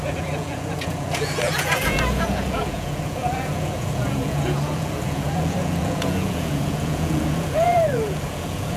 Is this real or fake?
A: fake